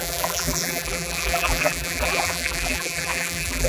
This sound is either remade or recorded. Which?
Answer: remade